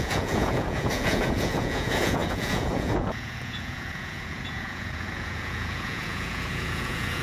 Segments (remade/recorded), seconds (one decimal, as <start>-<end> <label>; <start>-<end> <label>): 0.0-7.2 remade